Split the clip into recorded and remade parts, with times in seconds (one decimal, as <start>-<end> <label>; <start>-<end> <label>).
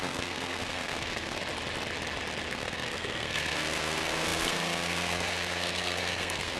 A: 0.0-1.5 remade; 1.5-2.5 recorded; 2.5-6.6 remade